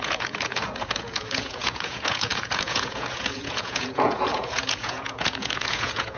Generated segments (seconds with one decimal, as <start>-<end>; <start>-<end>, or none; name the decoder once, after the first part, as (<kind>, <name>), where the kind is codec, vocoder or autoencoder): 0.0-6.2 (vocoder, Vocos)